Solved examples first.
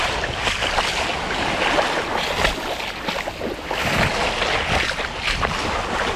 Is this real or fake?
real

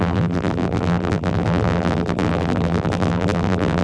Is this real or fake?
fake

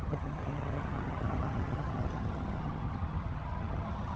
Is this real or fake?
fake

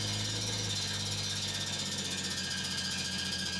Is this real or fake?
real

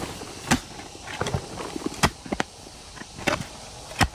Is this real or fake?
fake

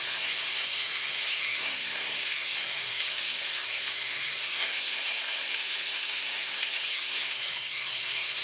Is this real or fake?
fake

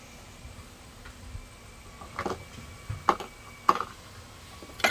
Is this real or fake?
real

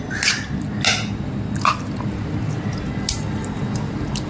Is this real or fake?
real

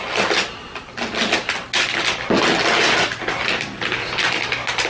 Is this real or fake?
real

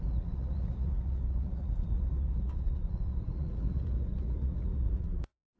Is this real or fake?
fake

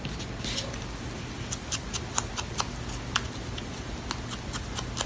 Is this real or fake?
real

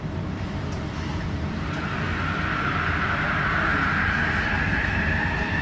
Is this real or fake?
real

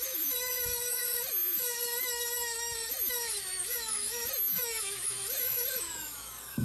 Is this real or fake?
fake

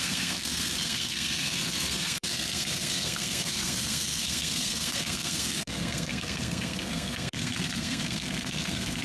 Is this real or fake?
fake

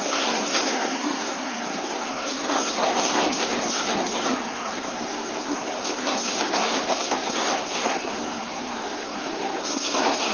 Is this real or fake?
fake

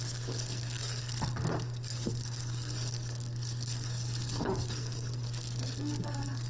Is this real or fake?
fake